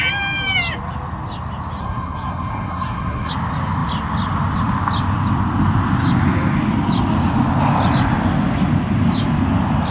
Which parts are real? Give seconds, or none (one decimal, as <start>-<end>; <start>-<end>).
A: 0.0-1.8; 3.3-9.9